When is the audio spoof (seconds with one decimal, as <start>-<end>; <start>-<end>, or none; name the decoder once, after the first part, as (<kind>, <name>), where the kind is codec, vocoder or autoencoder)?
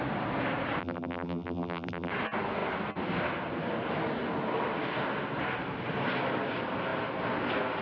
0.8-2.1 (vocoder, BigVGAN v2)